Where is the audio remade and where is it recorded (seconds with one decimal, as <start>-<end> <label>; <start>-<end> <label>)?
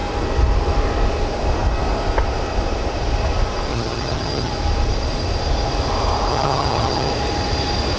0.0-3.7 recorded; 3.7-4.5 remade; 4.5-6.3 recorded; 6.3-7.1 remade; 7.1-8.0 recorded